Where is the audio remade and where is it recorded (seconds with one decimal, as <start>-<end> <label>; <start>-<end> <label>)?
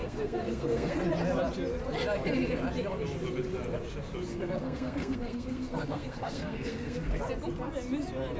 0.0-1.0 remade; 1.0-4.3 recorded; 4.3-7.2 remade; 7.2-8.4 recorded